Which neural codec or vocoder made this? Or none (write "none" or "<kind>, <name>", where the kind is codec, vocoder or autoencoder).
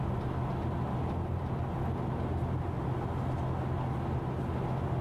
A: none